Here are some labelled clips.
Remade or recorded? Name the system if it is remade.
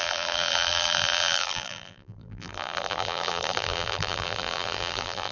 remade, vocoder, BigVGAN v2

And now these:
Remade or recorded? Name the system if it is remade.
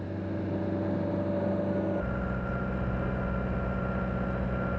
recorded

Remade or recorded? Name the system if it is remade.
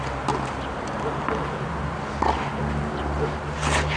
recorded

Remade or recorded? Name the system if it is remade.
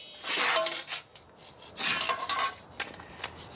recorded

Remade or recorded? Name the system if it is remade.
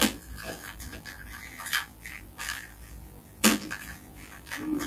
remade, vocoder, BigVGAN v2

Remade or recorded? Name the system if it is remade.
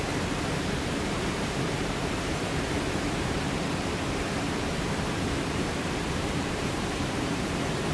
remade, vocoder, BigVGAN v2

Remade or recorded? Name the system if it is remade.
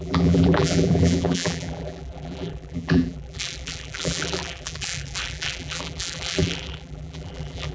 remade, vocoder, BigVGAN v2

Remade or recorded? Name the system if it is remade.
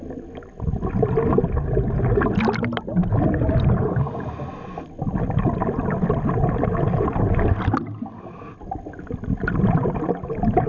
recorded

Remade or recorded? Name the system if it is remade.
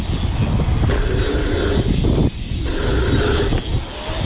recorded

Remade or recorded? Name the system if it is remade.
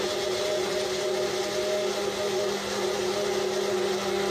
recorded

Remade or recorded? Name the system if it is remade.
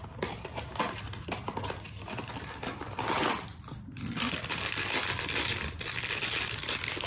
remade, vocoder, BigVGAN v2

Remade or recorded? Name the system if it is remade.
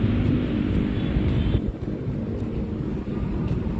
recorded